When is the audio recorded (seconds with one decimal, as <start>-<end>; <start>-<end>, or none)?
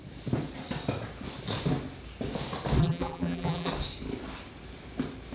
0.0-2.8; 3.7-5.3